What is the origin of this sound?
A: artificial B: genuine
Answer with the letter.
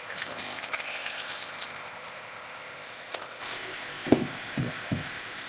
A